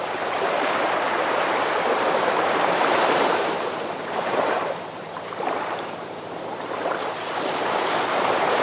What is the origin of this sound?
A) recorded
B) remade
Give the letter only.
B